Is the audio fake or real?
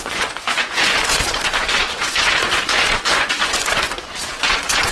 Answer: fake